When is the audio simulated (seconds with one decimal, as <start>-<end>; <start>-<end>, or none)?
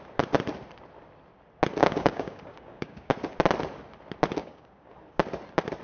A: 1.8-3.1; 4.4-4.9